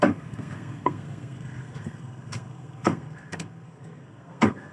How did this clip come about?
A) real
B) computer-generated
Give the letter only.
B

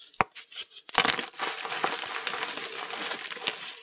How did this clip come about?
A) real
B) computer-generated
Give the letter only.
A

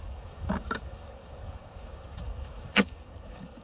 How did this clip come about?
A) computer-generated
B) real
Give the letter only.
A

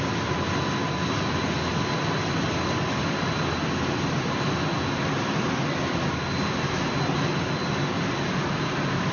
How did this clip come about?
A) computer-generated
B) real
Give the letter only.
B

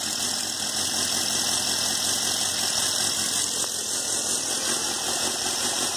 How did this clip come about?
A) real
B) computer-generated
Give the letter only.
A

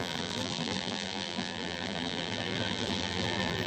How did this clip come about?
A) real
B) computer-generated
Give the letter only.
B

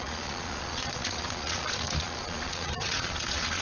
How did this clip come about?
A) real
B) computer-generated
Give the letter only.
B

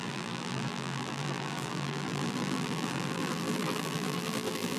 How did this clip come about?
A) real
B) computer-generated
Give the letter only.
B